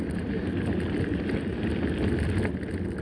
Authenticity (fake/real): real